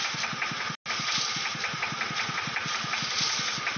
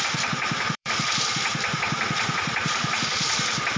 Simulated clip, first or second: second